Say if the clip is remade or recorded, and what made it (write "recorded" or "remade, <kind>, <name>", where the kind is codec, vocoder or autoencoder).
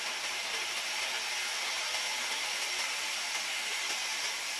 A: recorded